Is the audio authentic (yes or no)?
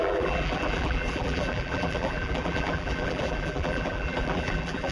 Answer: no